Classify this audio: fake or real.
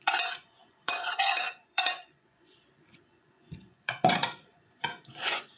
fake